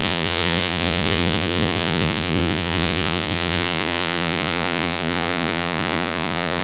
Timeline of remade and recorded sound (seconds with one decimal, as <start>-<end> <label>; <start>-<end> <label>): 0.0-6.6 remade